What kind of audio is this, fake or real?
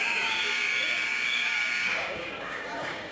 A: fake